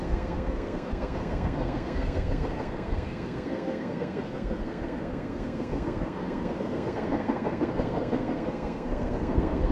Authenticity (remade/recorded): remade